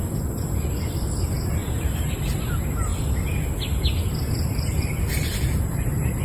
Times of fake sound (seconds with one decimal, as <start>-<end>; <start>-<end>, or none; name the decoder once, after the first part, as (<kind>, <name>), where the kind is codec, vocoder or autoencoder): 1.6-2.5 (vocoder, BigVGAN v2); 5.3-6.2